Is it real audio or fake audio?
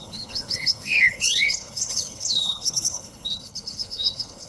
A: fake